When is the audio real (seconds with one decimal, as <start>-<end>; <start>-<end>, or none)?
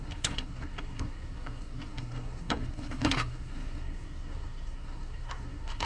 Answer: none